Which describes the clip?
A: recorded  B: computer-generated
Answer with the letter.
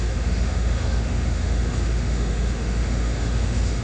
B